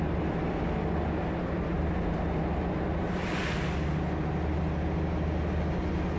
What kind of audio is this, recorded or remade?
recorded